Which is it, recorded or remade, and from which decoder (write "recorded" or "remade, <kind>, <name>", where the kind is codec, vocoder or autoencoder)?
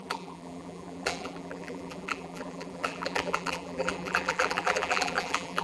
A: remade, vocoder, BigVGAN v2